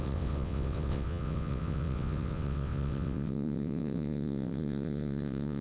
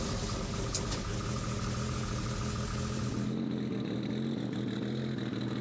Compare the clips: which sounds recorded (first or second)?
second